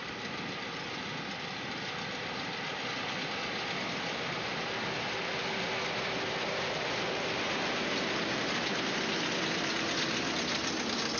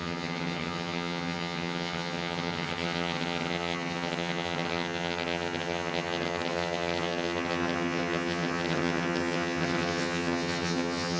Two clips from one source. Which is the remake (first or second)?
second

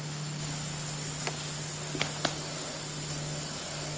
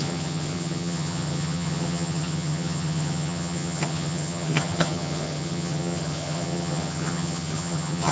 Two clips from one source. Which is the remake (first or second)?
second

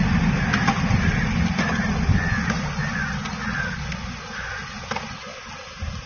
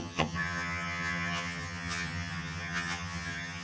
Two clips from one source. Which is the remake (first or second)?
second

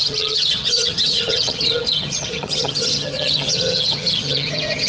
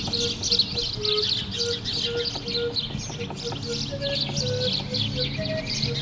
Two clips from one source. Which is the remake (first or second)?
first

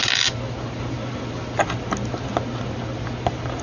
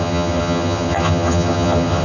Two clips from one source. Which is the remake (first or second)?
second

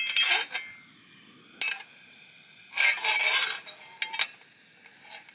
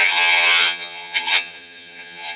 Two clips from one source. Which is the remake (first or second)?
second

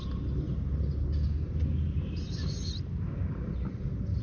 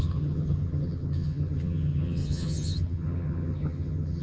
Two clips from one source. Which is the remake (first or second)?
second